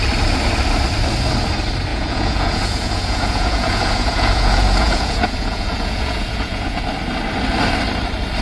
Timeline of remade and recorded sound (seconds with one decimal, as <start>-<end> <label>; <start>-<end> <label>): 0.0-1.9 recorded; 1.9-6.8 remade; 6.8-8.4 recorded